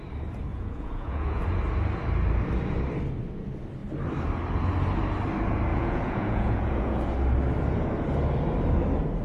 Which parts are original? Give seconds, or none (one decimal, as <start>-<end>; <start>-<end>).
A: 0.0-0.5; 1.4-5.7; 7.0-9.2